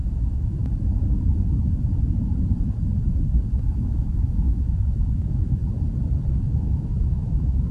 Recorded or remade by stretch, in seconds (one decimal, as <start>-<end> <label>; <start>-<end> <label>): 0.0-0.6 remade; 0.6-3.6 recorded; 3.6-5.6 remade; 5.6-6.5 recorded; 6.5-7.7 remade